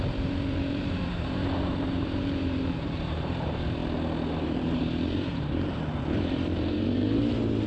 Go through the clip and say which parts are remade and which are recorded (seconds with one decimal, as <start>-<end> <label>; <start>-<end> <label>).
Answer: 0.0-3.8 remade; 3.8-4.4 recorded; 4.4-7.7 remade